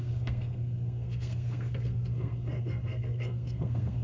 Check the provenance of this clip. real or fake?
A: fake